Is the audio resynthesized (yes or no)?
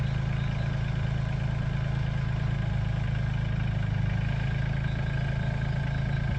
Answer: no